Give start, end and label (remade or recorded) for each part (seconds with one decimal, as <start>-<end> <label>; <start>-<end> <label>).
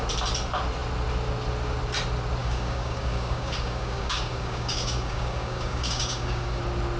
0.0-2.4 recorded; 2.4-6.6 remade; 6.6-7.0 recorded